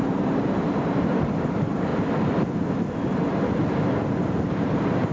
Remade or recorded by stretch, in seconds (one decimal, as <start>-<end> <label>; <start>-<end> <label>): 0.0-1.9 remade; 1.9-4.5 recorded; 4.5-5.1 remade